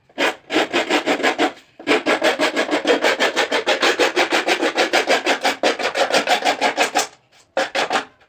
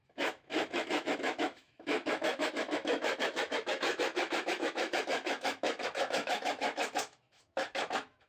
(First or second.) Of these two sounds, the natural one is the first